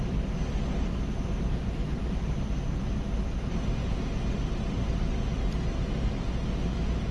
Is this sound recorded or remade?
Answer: recorded